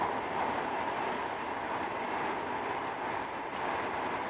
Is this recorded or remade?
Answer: recorded